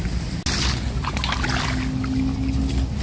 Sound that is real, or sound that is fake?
real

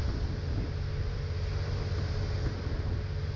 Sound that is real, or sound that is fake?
real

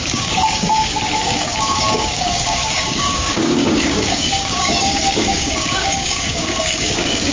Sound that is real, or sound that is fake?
fake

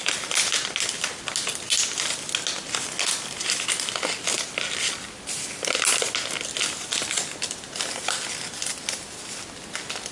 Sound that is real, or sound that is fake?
real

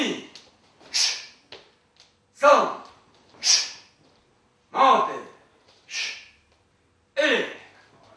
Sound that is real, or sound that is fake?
real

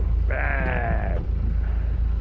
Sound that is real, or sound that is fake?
real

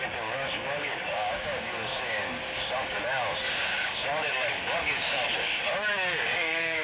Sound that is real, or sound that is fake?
fake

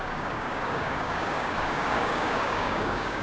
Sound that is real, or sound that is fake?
fake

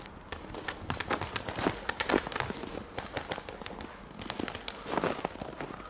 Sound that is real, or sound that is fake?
real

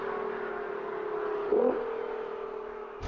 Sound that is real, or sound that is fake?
real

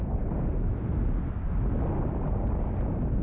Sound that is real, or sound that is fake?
real